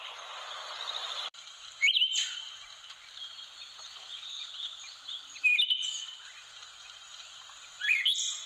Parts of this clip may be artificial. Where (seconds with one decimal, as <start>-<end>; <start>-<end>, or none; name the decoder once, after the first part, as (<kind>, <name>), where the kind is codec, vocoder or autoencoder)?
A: 1.0-2.6 (vocoder, BigVGAN v2); 3.2-6.5; 7.1-7.8